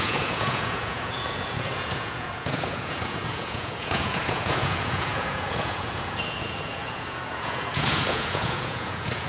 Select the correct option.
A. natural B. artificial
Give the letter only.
B